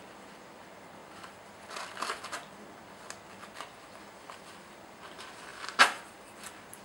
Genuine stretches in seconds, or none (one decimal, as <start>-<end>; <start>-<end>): 0.0-6.8